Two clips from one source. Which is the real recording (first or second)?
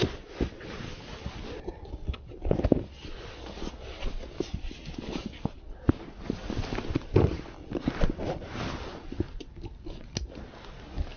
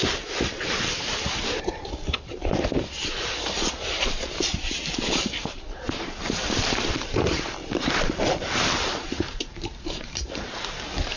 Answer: first